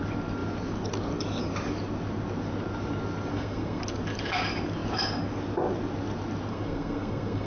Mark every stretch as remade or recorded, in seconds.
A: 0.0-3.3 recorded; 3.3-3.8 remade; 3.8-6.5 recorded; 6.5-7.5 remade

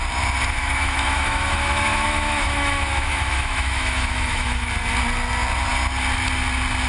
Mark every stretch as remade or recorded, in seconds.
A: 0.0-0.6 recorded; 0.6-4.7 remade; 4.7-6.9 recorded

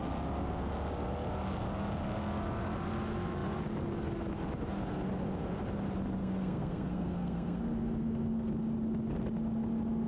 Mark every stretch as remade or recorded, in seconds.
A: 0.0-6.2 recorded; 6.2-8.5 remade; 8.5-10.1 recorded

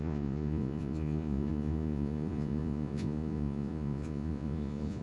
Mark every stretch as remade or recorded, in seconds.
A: 0.0-5.0 remade